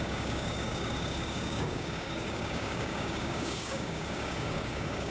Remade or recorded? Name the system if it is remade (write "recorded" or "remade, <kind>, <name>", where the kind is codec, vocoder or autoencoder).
remade, codec, DAC